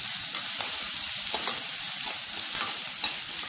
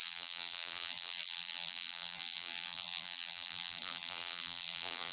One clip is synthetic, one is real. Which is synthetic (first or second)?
second